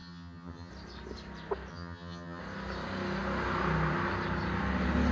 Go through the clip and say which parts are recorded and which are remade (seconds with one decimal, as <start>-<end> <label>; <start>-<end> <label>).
0.0-0.7 remade; 0.7-1.7 recorded; 1.7-2.4 remade; 2.4-5.1 recorded